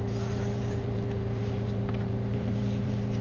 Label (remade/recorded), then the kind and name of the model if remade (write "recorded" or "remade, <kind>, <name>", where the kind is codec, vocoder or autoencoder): remade, vocoder, BigVGAN v2